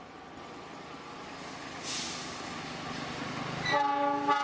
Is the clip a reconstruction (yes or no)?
no